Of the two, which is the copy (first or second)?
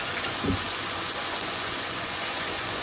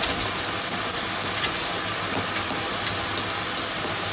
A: first